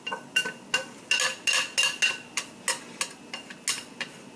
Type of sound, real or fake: real